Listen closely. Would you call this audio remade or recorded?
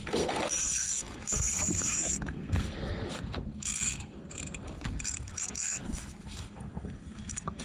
remade